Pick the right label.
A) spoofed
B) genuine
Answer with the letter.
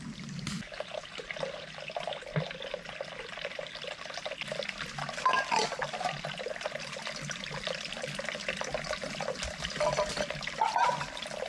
B